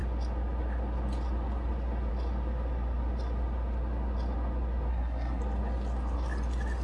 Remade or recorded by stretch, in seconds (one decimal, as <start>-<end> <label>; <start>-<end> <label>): 0.0-4.9 recorded; 4.9-5.4 remade; 5.4-6.8 recorded